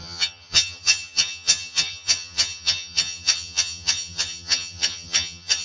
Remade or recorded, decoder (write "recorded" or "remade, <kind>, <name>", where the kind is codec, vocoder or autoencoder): remade, vocoder, HiFi-GAN